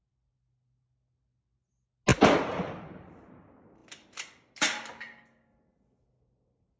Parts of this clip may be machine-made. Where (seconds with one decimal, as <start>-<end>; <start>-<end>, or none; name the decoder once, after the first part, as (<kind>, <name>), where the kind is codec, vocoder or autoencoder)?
none